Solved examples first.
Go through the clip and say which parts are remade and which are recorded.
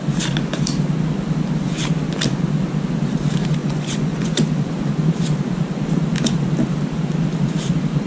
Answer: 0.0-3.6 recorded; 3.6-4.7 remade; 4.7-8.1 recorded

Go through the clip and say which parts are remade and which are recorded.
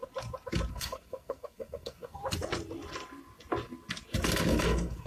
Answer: 0.0-0.7 recorded; 0.7-2.2 remade; 2.2-4.6 recorded; 4.6-5.1 remade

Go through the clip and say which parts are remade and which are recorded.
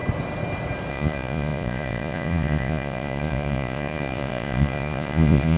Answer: 0.0-0.9 recorded; 0.9-5.6 remade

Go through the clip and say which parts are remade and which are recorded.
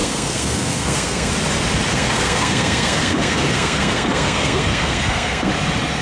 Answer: 0.0-1.3 remade; 1.3-1.9 recorded; 1.9-5.5 remade; 5.5-6.0 recorded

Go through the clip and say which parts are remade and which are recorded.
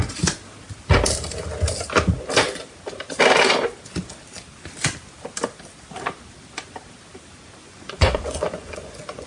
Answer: 0.0-7.6 recorded; 7.6-9.3 remade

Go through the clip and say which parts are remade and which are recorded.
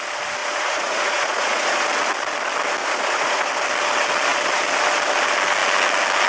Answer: 0.0-0.4 recorded; 0.4-1.8 remade; 1.8-2.8 recorded; 2.8-3.4 remade; 3.4-6.3 recorded